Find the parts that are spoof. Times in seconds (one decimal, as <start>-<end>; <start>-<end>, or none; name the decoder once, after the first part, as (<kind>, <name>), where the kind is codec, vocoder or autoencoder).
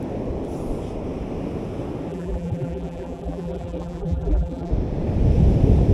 2.1-4.7 (vocoder, BigVGAN v2)